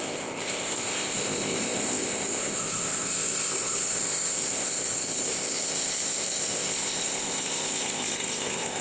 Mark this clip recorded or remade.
remade